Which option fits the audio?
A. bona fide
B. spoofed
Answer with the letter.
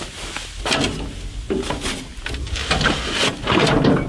A